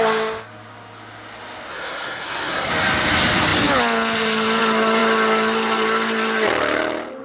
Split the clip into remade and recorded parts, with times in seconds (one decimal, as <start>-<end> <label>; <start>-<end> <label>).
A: 0.0-1.7 recorded; 1.7-2.7 remade; 2.7-7.2 recorded